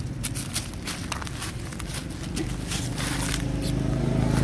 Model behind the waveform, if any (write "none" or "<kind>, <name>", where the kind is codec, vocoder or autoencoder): none